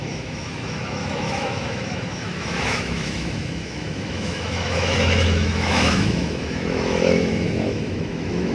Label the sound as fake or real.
fake